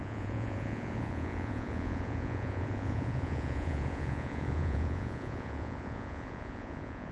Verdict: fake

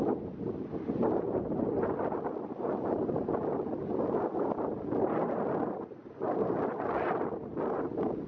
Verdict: real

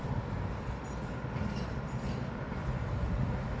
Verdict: real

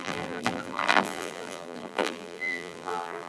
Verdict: fake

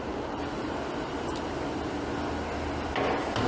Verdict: real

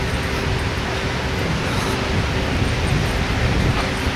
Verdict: real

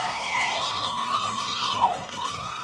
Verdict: fake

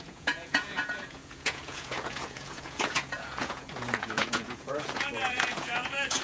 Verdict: fake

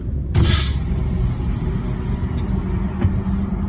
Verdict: real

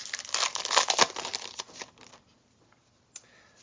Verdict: real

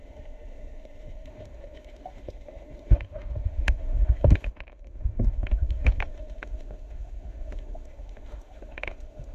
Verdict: fake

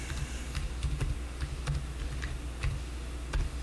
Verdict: real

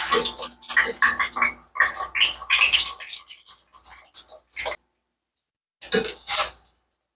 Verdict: real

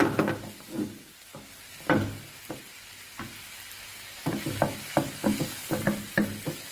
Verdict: real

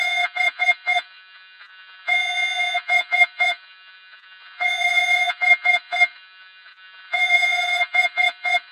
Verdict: fake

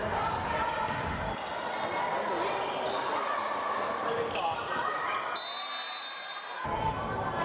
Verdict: real